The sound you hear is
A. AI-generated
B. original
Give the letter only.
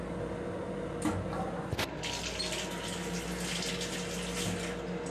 B